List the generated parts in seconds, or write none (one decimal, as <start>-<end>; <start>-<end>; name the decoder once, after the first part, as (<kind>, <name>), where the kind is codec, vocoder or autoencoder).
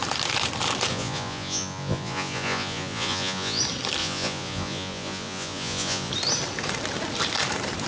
0.9-3.6 (vocoder, Vocos); 4.0-6.1